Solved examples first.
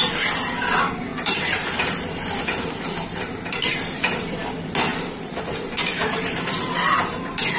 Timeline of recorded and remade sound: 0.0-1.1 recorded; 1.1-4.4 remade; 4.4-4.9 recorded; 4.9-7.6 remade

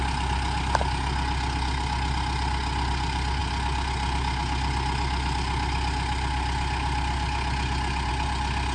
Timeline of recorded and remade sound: 0.0-8.7 recorded

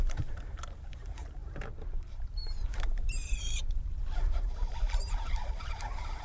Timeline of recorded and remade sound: 0.0-6.2 remade

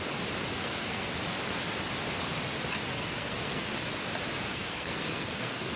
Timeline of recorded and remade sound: 0.0-0.5 recorded; 0.5-1.1 remade; 1.1-2.9 recorded; 2.9-3.7 remade; 3.7-4.5 recorded; 4.5-5.8 remade

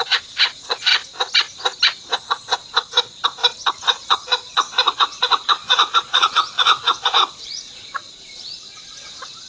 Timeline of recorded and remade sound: 0.0-0.9 remade; 0.9-2.2 recorded; 2.2-3.2 remade; 3.2-4.0 recorded; 4.0-9.5 remade

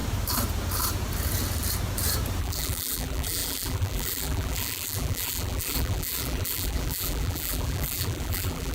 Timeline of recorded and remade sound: 0.0-2.4 recorded; 2.4-8.7 remade

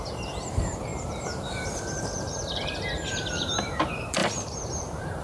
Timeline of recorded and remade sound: 0.0-5.2 remade